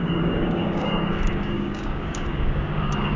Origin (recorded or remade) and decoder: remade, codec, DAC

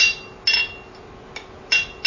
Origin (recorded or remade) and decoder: recorded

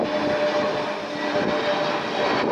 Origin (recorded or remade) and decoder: recorded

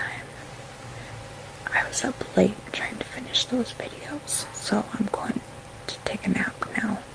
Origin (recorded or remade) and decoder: recorded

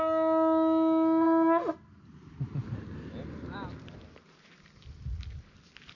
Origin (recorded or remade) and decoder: recorded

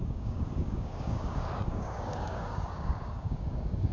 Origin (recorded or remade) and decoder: remade, codec, DAC